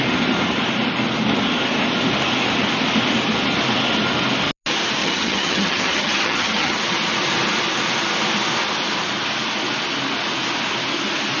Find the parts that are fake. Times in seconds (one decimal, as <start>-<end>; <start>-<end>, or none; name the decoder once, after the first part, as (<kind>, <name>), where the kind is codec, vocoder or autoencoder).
5.0-6.8 (vocoder, HiFi-GAN)